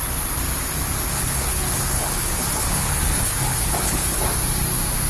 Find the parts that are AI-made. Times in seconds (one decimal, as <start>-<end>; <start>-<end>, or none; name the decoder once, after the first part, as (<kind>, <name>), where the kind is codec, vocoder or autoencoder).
1.1-4.2 (codec, HILCodec)